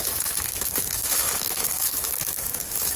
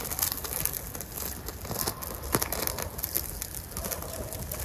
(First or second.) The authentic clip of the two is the second